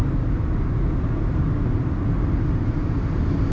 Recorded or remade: recorded